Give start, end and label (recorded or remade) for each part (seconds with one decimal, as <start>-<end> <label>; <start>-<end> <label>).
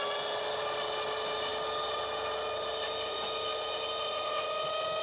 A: 0.0-5.0 recorded